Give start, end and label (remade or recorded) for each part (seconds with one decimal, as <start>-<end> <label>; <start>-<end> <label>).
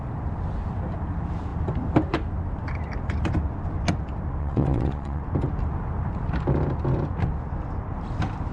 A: 0.0-4.4 recorded; 4.4-5.2 remade; 5.2-8.5 recorded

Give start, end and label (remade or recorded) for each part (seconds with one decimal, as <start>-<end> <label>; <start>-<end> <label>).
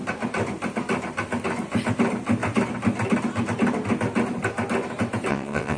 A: 0.0-5.3 recorded; 5.3-5.8 remade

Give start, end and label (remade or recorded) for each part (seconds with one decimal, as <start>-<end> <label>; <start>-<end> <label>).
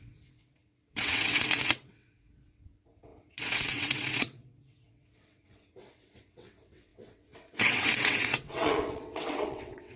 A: 0.0-10.0 remade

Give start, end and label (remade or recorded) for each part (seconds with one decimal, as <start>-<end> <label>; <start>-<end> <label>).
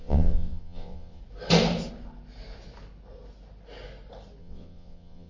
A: 0.0-1.2 remade; 1.2-4.4 recorded; 4.4-5.3 remade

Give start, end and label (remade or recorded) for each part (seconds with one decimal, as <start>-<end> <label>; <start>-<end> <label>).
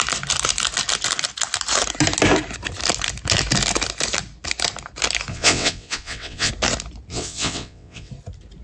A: 0.0-5.3 recorded; 5.3-6.5 remade; 6.5-7.1 recorded; 7.1-8.1 remade; 8.1-8.6 recorded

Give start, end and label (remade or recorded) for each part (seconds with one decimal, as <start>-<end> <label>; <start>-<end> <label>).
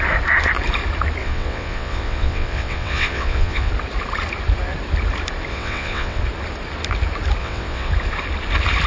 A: 0.0-1.2 recorded; 1.2-3.7 remade; 3.7-5.5 recorded; 5.5-6.2 remade; 6.2-7.4 recorded; 7.4-7.9 remade; 7.9-8.9 recorded